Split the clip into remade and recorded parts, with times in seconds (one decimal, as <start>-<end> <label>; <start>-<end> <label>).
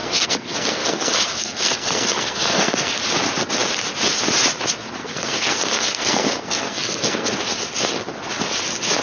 0.0-2.9 remade; 2.9-5.0 recorded; 5.0-7.3 remade; 7.3-9.0 recorded